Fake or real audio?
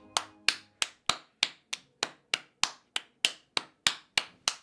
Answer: real